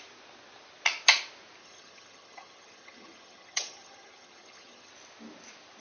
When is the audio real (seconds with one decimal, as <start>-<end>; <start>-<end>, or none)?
0.0-1.6; 4.9-5.8